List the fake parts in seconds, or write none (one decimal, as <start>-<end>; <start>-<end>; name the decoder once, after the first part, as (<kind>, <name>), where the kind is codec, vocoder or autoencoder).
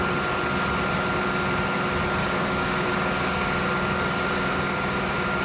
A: 2.2-5.4 (codec, DAC)